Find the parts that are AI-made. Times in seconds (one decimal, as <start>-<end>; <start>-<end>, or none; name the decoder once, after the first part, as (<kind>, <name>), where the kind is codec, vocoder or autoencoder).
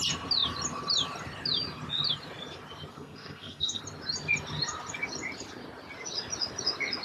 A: 2.9-3.8 (codec, SNAC)